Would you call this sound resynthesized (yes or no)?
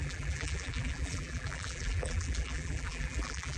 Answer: yes